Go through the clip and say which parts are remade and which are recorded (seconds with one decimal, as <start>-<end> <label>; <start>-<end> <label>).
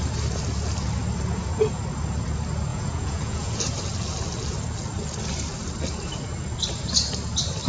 0.0-2.7 recorded; 2.7-3.6 remade; 3.6-7.7 recorded